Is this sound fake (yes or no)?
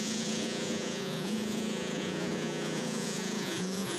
yes